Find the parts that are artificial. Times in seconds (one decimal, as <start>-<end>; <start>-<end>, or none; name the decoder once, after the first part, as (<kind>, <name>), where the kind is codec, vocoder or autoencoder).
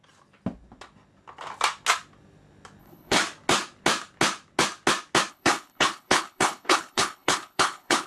2.8-3.2 (codec, HILCodec); 5.3-8.1